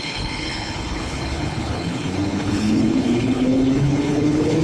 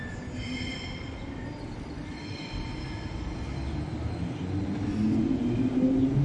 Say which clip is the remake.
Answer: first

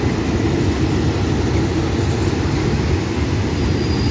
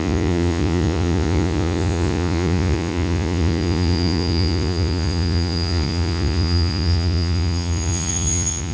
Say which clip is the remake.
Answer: second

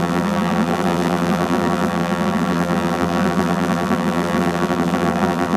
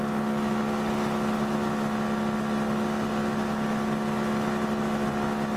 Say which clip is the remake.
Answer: first